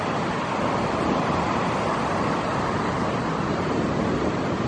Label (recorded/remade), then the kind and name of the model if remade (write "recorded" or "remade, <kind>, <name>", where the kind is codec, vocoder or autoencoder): recorded